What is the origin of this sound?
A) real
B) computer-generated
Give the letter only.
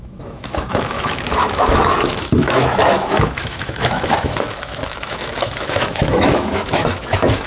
B